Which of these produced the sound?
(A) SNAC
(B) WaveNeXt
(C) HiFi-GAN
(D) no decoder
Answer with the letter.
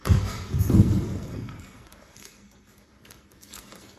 A